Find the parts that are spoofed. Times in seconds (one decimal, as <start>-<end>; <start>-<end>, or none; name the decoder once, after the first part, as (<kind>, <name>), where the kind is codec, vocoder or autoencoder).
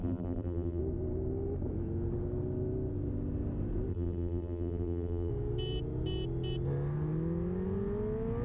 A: 0.0-0.8 (vocoder, BigVGAN v2); 3.9-5.3